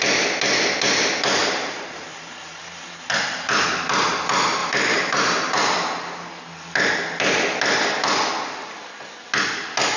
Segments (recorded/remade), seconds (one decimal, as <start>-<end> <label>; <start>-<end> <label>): 0.0-1.4 recorded; 1.4-4.1 remade; 4.1-4.6 recorded; 4.6-6.3 remade; 6.3-10.0 recorded